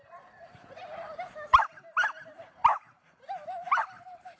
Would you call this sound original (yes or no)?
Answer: yes